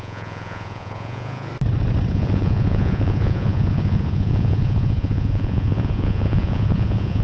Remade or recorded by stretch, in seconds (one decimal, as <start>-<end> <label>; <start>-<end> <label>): 0.0-1.5 remade; 1.5-2.1 recorded; 2.1-7.2 remade